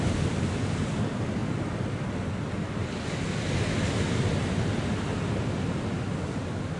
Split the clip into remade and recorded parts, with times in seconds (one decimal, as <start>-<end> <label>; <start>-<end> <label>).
0.0-6.8 recorded